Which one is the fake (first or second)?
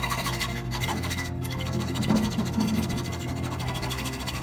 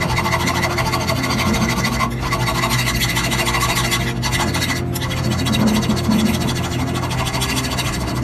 first